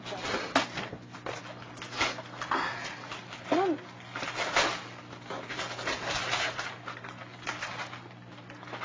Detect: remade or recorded recorded